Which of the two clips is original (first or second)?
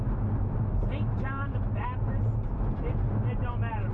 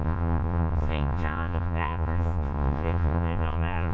first